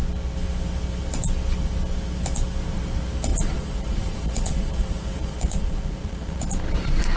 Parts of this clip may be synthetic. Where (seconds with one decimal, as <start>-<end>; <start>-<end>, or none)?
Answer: 3.3-6.4